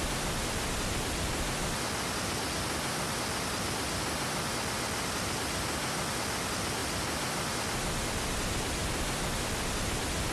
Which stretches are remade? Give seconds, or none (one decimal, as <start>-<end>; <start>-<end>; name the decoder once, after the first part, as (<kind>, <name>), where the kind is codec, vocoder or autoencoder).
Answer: none

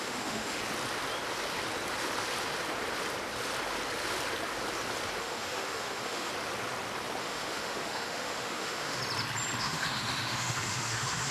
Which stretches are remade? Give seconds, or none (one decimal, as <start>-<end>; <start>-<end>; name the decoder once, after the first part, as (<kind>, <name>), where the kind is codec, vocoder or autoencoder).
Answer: 0.0-0.6 (autoencoder, DAC-VAE); 5.2-6.3; 7.2-9.0; 9.6-11.3

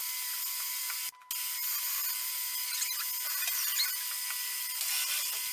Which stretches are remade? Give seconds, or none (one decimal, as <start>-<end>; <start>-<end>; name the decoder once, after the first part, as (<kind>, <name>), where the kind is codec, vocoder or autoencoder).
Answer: none

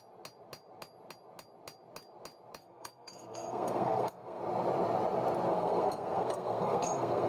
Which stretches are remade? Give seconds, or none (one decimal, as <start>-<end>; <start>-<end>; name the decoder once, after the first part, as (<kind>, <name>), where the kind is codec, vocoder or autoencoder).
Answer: 2.6-4.4 (codec, SNAC); 5.5-7.3

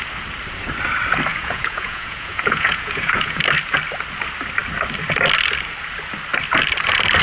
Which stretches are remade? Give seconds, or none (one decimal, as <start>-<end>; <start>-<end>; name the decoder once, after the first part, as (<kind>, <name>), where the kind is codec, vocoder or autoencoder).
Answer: 1.3-3.4 (vocoder, Vocos)

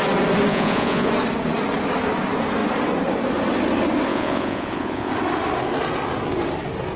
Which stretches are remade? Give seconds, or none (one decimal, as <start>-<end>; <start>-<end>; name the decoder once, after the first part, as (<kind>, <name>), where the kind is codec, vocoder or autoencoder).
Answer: 0.5-1.1 (vocoder, Vocos); 4.1-5.1